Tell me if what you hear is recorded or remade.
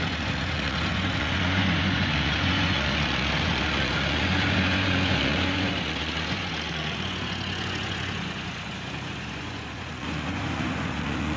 remade